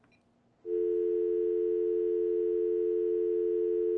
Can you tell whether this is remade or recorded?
recorded